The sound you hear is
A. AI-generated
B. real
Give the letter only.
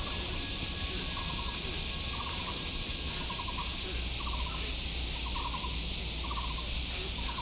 B